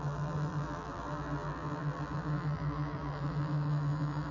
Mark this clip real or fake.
fake